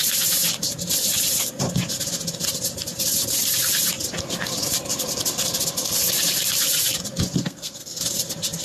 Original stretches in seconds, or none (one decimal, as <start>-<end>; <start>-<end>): 0.0-7.4; 8.0-8.6